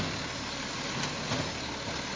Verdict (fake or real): real